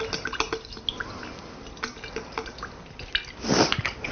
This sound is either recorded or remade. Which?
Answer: recorded